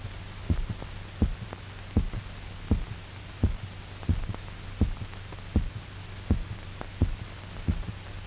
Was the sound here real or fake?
real